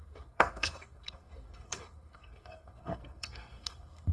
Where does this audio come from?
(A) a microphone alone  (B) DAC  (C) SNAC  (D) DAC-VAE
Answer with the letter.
C